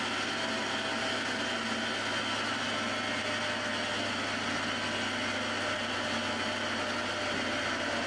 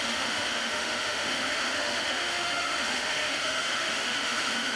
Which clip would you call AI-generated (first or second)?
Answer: second